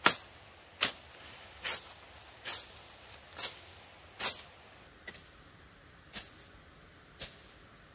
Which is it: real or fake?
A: real